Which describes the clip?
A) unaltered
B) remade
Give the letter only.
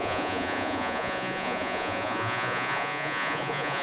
B